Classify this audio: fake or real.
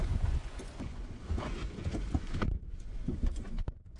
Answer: fake